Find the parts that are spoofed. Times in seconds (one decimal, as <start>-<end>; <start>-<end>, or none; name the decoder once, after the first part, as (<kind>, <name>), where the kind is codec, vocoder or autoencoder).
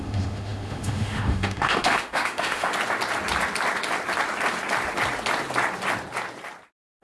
0.0-2.7 (autoencoder, DAC-VAE)